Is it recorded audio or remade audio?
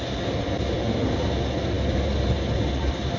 recorded